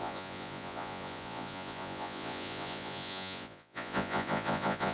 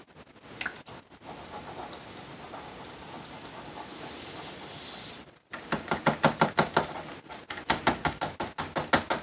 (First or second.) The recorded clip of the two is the second